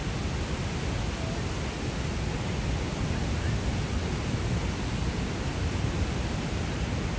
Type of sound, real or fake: real